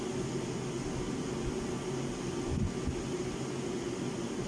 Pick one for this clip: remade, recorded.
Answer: recorded